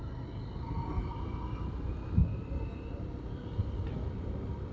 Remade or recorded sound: recorded